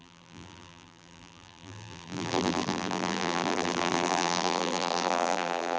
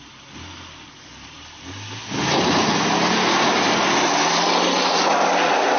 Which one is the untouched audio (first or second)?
second